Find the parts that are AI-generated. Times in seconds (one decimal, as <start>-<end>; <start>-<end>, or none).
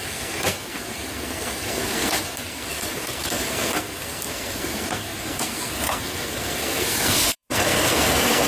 0.0-8.5